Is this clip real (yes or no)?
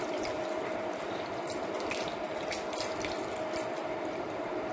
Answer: no